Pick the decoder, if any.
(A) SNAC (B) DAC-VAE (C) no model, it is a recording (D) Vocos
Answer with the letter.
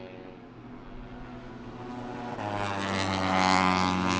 C